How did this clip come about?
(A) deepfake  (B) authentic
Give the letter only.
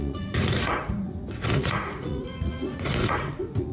A